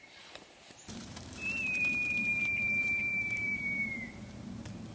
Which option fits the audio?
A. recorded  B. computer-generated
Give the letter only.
B